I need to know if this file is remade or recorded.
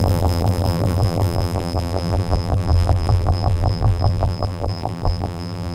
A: remade